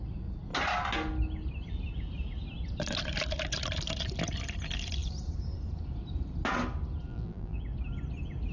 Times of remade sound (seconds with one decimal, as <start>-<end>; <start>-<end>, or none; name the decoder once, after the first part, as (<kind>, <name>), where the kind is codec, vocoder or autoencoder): 7.1-7.6 (vocoder, BigVGAN v2)